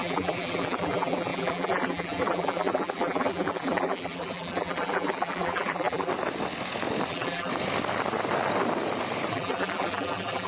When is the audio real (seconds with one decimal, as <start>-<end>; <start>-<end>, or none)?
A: 6.1-7.1; 7.5-9.3

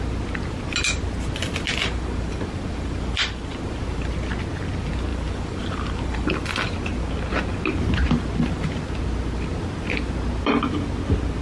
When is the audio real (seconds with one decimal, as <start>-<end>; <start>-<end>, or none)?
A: 0.0-1.8; 4.1-5.1; 6.3-11.4

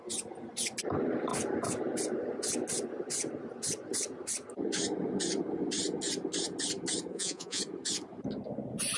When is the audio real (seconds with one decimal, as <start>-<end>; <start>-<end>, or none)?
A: 0.0-7.1; 7.6-9.0

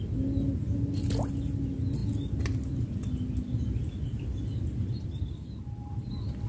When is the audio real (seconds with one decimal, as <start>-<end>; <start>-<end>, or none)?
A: 0.0-4.1; 5.9-6.5